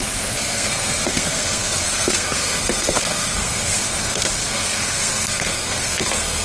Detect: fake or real fake